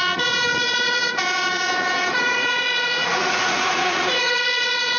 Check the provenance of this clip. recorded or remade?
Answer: remade